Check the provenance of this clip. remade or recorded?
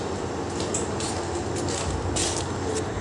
recorded